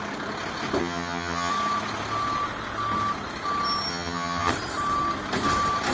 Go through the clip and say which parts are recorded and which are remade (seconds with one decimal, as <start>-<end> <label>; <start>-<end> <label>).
0.0-0.8 recorded; 0.8-1.5 remade; 1.5-3.9 recorded; 3.9-4.5 remade; 4.5-5.9 recorded